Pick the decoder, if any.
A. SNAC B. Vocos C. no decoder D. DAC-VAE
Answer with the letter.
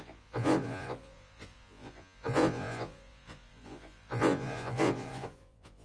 B